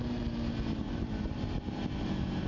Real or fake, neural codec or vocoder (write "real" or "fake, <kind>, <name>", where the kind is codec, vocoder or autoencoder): fake, vocoder, BigVGAN v2